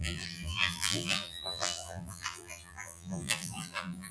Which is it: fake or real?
fake